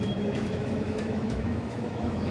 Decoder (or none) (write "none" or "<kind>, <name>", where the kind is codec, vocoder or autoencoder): autoencoder, DAC-VAE